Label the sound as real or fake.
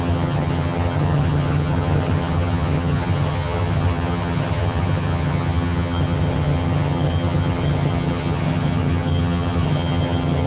fake